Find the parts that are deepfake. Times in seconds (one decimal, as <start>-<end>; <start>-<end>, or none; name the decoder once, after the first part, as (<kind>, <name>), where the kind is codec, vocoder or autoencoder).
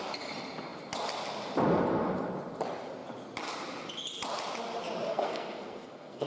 5.1-6.3 (codec, SNAC)